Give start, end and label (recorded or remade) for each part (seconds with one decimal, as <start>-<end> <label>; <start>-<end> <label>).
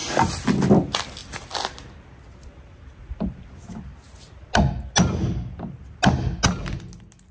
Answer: 0.0-7.3 recorded